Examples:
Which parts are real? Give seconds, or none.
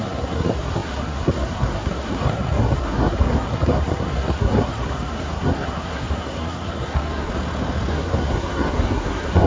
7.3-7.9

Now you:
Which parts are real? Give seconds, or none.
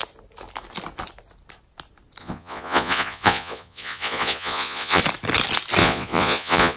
0.0-2.2; 5.0-5.8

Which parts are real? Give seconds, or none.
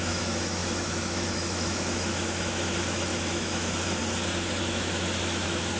4.0-4.6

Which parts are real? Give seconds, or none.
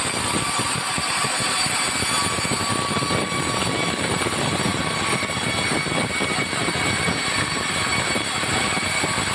0.0-9.3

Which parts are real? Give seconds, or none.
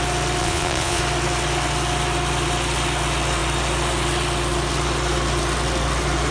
0.0-0.4; 1.0-6.3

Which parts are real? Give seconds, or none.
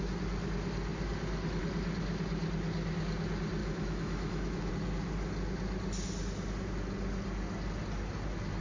0.0-3.6; 4.7-8.6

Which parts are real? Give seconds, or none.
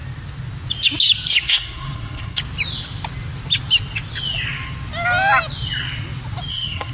0.0-1.4; 2.4-6.5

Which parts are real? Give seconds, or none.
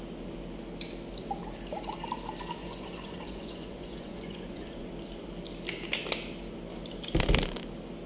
0.0-2.6; 4.9-8.1